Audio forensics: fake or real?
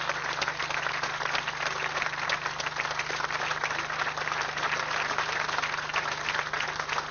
real